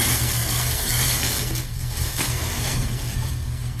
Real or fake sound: fake